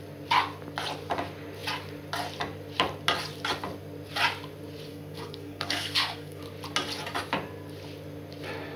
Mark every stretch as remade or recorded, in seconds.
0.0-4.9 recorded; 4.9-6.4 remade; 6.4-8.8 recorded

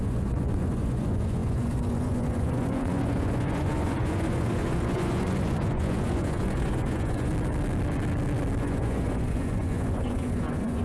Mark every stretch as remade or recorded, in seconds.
0.0-7.3 remade; 7.3-8.6 recorded; 8.6-10.8 remade

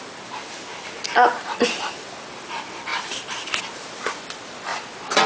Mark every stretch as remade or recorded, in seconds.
0.0-0.7 recorded; 0.7-2.0 remade; 2.0-2.9 recorded; 2.9-3.9 remade; 3.9-4.7 recorded; 4.7-5.3 remade

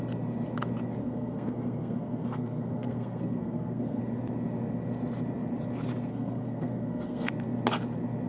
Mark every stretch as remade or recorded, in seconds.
0.0-1.0 recorded; 1.0-4.0 remade; 4.0-6.1 recorded; 6.1-7.3 remade; 7.3-8.3 recorded

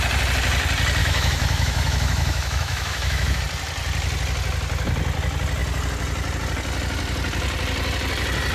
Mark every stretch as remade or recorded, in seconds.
0.0-1.0 recorded; 1.0-3.4 remade; 3.4-8.5 recorded

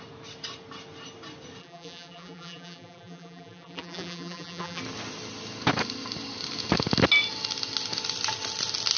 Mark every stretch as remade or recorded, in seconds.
0.0-1.6 recorded; 1.6-4.8 remade; 4.8-9.0 recorded